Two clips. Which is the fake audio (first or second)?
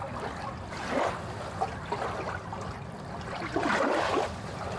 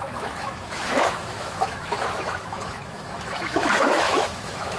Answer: second